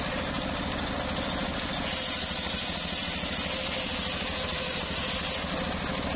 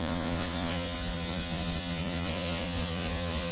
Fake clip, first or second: second